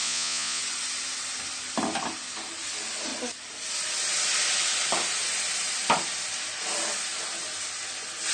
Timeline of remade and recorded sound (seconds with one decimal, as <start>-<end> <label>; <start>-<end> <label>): 0.0-0.6 remade; 0.6-8.3 recorded